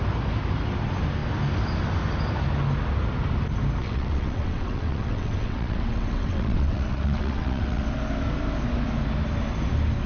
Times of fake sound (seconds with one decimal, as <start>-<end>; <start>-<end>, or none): 3.8-7.8